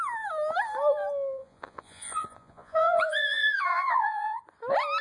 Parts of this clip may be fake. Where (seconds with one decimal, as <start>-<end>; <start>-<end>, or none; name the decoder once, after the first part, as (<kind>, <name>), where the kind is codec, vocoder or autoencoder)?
1.4-4.4 (vocoder, Vocos)